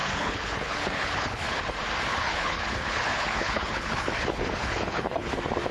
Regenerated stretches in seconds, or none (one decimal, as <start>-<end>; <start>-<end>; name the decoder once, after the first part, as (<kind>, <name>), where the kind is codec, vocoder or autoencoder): 0.0-1.6 (codec, HILCodec); 2.1-5.3